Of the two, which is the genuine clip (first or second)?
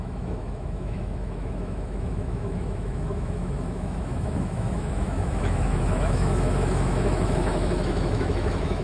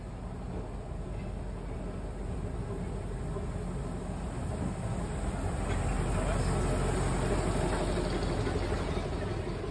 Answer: second